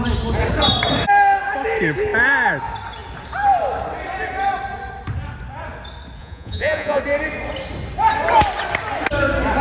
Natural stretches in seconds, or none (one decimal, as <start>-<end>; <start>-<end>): 0.0-6.2; 7.0-9.6